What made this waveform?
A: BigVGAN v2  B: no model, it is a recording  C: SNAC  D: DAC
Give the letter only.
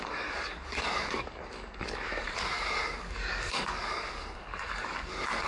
D